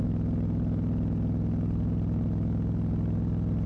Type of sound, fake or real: real